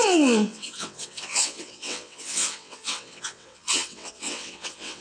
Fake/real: fake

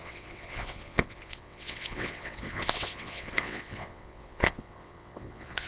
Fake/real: fake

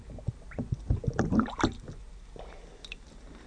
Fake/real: real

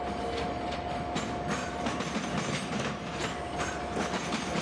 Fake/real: real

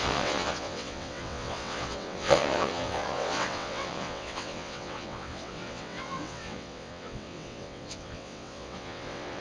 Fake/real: fake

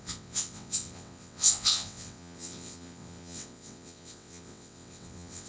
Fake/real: fake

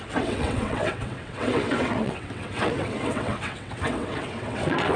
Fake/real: fake